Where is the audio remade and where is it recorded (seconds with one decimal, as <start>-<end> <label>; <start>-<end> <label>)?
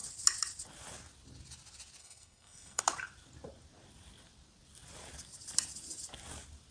0.0-2.0 recorded; 2.0-2.8 remade; 2.8-6.7 recorded